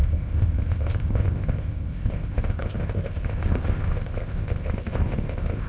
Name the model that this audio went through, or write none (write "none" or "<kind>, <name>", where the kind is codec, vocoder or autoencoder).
codec, ZipCodec